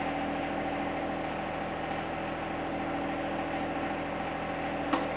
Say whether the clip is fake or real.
real